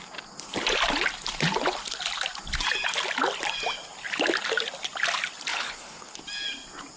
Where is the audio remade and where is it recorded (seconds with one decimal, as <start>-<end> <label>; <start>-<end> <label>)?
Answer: 0.0-5.5 recorded; 5.5-6.2 remade; 6.2-7.0 recorded